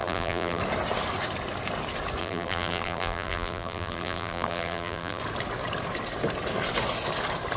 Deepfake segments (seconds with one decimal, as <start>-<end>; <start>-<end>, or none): 0.0-0.6; 2.2-5.2